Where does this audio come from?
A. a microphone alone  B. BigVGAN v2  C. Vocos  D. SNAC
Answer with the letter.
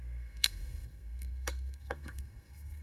D